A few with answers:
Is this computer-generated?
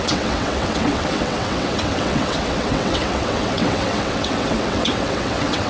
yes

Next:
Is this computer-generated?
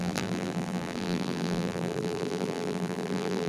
yes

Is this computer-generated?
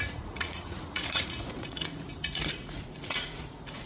yes